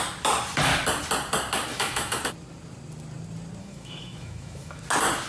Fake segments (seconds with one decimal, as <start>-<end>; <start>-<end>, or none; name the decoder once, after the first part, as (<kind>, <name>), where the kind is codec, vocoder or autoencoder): 1.7-2.2 (autoencoder, DAC-VAE); 3.6-4.8